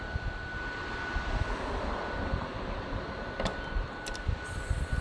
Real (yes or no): yes